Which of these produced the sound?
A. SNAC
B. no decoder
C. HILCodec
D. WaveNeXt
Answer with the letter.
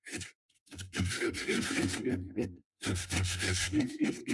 A